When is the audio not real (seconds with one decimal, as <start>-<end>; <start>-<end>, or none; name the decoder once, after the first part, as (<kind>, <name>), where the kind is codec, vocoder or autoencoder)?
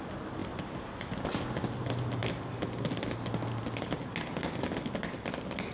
none